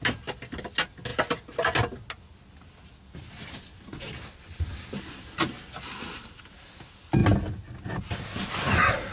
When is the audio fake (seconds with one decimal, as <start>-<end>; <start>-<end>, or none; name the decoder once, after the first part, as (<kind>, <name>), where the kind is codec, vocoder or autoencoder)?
none